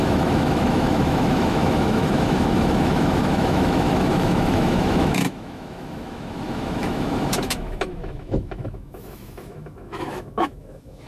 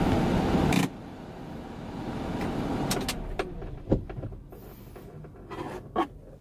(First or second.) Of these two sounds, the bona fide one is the second